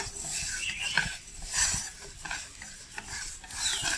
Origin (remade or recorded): recorded